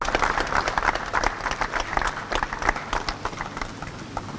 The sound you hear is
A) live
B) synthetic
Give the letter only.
A